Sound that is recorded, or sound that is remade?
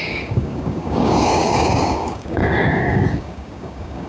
remade